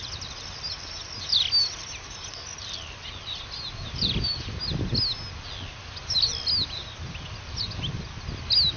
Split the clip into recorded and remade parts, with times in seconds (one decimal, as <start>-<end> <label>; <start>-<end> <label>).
0.0-8.8 recorded